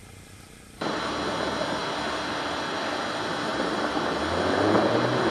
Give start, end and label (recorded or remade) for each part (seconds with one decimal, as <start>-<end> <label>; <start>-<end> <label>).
0.0-1.0 remade; 1.0-3.5 recorded; 3.5-4.2 remade; 4.2-5.3 recorded